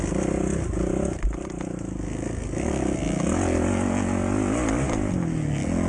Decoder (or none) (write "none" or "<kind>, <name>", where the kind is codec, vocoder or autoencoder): none